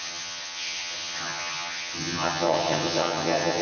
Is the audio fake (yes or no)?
yes